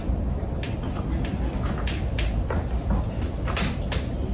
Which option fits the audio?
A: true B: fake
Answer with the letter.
A